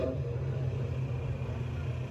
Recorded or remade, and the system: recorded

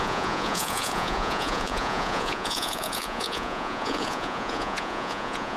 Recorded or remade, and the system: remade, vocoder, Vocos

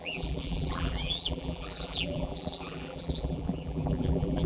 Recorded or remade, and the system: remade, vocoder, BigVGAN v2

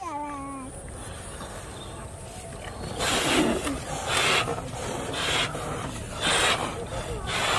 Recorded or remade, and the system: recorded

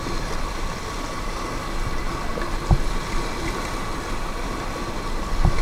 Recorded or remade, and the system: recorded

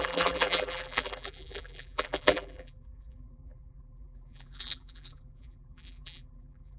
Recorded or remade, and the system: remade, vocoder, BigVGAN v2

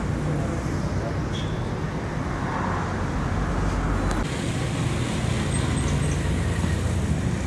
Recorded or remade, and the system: recorded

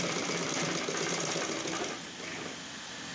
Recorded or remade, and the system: recorded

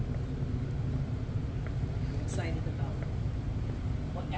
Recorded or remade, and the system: recorded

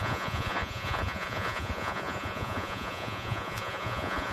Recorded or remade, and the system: remade, vocoder, Vocos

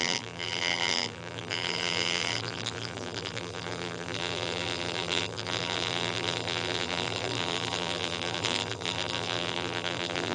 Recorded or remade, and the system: remade, vocoder, BigVGAN v2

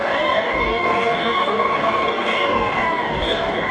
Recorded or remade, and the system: remade, codec, DAC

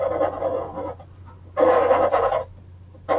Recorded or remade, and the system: recorded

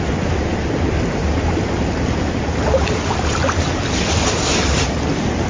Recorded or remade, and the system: recorded